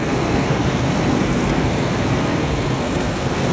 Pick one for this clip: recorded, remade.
remade